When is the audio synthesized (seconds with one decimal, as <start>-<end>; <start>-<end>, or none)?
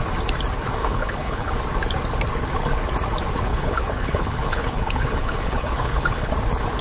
0.8-1.5; 3.5-6.3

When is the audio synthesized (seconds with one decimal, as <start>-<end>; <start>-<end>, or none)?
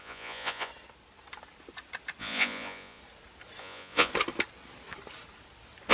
0.0-0.7; 2.2-3.0; 3.6-4.1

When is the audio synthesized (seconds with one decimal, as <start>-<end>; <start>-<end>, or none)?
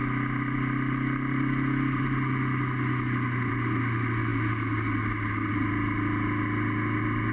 none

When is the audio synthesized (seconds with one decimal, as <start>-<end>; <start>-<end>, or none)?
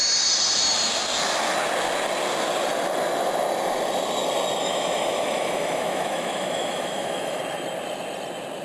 4.6-7.4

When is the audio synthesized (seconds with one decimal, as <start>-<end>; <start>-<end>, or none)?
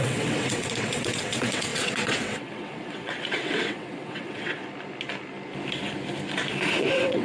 0.0-4.6; 6.7-7.2